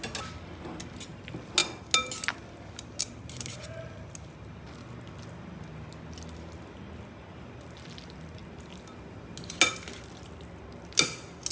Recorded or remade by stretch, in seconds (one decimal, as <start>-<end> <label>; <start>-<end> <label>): 0.0-11.5 recorded